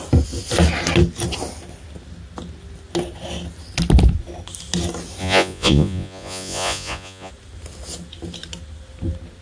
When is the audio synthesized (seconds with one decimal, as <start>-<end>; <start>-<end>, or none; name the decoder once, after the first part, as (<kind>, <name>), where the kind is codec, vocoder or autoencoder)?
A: 5.2-7.3 (vocoder, Vocos)